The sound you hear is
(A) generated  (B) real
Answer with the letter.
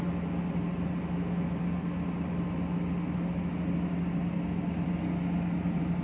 B